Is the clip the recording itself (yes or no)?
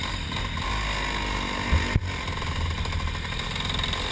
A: yes